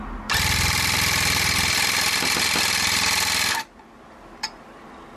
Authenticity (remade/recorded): recorded